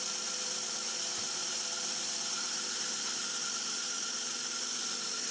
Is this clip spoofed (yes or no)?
no